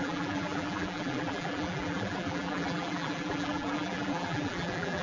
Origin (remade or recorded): remade